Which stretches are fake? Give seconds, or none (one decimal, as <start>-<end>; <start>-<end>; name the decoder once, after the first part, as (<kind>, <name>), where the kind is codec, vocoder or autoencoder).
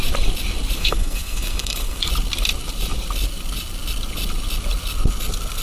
0.8-2.0 (codec, SNAC)